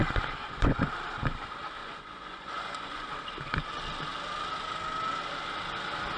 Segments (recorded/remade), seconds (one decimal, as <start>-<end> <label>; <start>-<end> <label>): 0.0-0.4 recorded; 0.4-0.9 remade; 0.9-1.8 recorded; 1.8-3.1 remade; 3.1-6.2 recorded